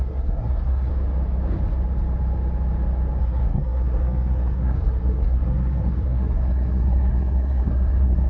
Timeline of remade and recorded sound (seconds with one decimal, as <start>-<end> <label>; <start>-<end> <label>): 0.0-0.9 remade; 0.9-3.2 recorded; 3.2-8.3 remade